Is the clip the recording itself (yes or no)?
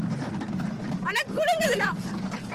yes